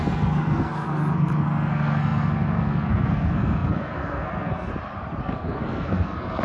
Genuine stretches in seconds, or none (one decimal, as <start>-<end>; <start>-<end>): 4.7-5.2